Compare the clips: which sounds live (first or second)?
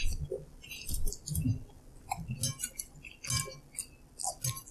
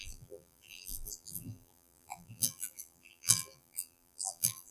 first